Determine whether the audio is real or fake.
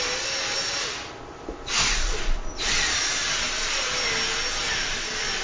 real